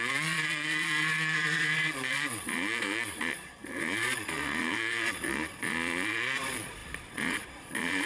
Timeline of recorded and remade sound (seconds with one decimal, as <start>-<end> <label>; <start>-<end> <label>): 0.0-8.1 remade